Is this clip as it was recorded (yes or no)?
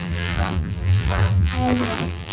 no